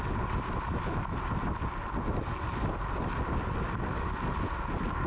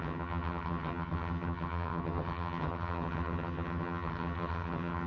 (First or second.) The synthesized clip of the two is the second